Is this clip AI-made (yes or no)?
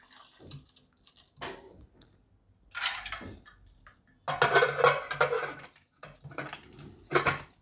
no